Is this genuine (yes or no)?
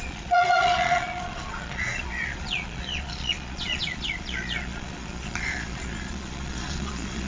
no